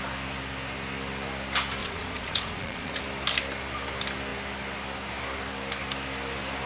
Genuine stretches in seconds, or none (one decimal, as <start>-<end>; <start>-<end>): 0.0-1.8; 3.0-6.7